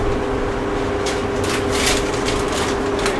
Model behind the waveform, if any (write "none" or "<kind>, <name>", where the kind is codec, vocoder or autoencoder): none